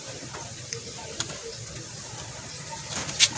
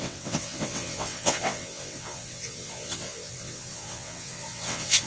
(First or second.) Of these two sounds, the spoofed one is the second